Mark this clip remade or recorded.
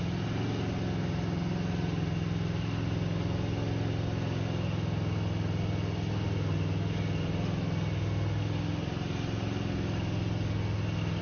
recorded